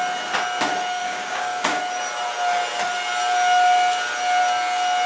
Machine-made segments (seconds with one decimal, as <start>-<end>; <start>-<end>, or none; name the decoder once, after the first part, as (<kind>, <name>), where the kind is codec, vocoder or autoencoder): 1.0-1.8 (codec, DAC)